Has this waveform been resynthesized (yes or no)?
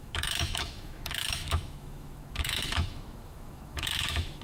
yes